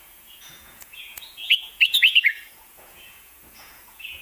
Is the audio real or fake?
fake